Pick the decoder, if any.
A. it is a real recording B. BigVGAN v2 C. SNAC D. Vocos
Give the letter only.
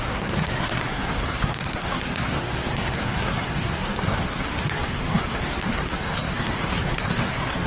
C